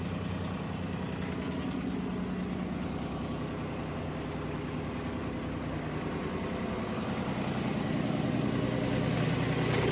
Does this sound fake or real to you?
real